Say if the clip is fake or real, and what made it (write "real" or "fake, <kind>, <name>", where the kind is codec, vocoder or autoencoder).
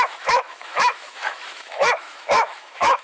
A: fake, autoencoder, DAC-VAE